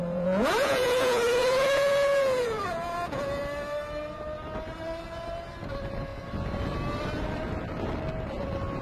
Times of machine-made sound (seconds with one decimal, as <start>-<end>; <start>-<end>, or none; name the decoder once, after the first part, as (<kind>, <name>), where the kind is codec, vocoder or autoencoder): 0.0-3.4 (vocoder, Vocos)